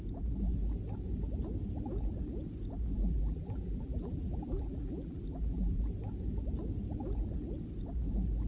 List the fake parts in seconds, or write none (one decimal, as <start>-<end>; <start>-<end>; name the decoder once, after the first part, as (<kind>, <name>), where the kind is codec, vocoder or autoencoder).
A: 3.0-5.8 (vocoder, BigVGAN v2)